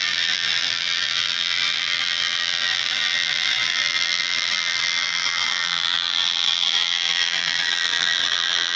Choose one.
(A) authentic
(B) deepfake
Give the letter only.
B